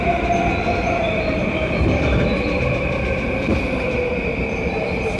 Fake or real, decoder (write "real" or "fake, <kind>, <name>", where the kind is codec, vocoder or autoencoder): fake, vocoder, BigVGAN v2